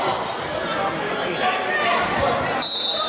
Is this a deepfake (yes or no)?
no